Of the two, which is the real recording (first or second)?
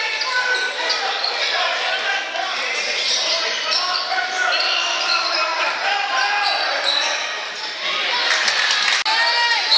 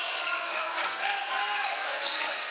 first